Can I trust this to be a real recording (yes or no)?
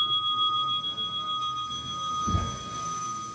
no